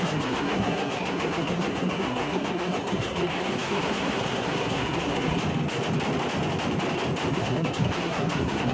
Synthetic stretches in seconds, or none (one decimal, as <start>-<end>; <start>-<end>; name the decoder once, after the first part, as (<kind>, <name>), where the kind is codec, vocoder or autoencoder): 0.0-5.4 (codec, SNAC); 7.3-8.7